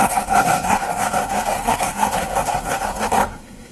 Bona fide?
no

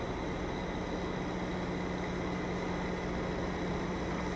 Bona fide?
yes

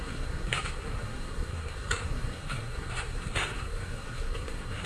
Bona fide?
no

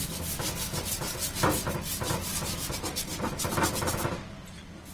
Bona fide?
yes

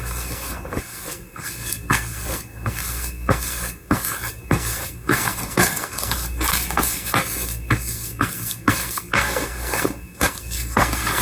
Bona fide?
no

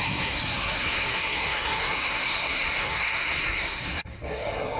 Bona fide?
no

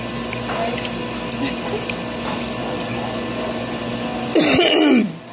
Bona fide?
yes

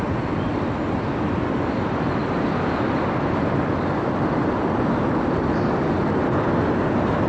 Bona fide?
yes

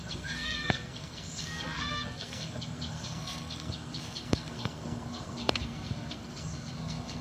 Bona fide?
no